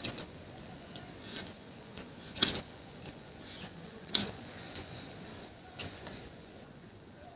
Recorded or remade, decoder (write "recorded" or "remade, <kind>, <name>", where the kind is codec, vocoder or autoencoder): remade, vocoder, Vocos